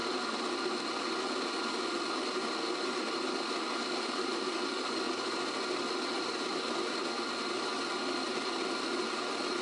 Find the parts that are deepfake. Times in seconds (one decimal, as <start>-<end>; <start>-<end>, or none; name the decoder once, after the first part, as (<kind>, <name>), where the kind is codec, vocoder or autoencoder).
none